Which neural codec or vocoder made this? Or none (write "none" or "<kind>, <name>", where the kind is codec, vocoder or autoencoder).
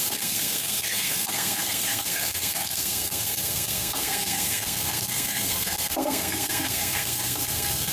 codec, SNAC